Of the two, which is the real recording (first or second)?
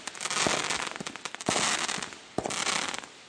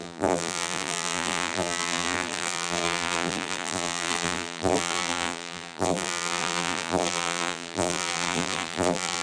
first